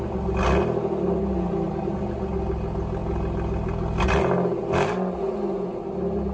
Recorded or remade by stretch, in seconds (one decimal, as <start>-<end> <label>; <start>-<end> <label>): 0.0-6.3 recorded